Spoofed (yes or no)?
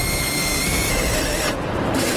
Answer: no